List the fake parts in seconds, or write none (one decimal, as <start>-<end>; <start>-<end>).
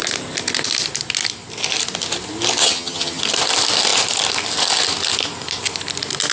2.6-3.2